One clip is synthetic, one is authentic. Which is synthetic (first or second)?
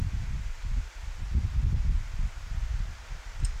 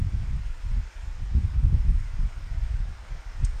second